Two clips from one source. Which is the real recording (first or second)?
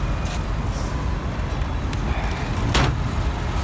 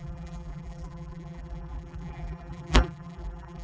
first